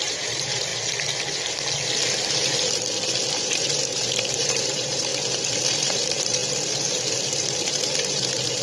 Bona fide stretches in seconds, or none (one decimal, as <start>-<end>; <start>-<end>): 0.7-3.3; 5.1-5.6; 6.4-7.2